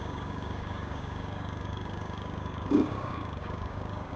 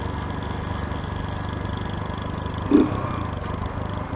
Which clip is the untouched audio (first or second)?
second